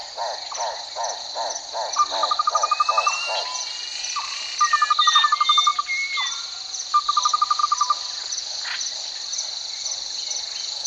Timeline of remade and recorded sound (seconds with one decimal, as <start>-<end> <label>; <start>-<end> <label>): 0.0-10.9 recorded